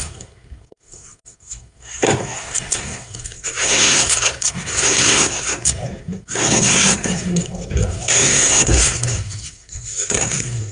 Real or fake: fake